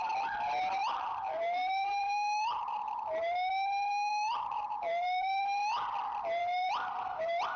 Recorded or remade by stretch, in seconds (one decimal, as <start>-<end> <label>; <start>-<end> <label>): 0.0-0.8 recorded; 0.8-2.9 remade; 2.9-4.1 recorded; 4.1-5.4 remade; 5.4-6.4 recorded; 6.4-7.6 remade

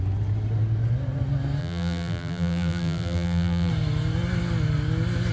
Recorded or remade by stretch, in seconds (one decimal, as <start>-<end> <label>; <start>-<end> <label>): 0.0-1.6 recorded; 1.6-3.7 remade; 3.7-5.3 recorded

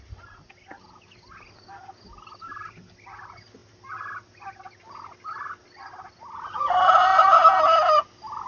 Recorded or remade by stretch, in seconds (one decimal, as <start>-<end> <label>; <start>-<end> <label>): 0.0-7.1 recorded; 7.1-7.6 remade; 7.6-8.5 recorded